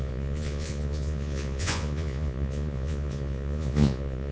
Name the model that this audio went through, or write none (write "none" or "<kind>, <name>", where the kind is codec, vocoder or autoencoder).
vocoder, Vocos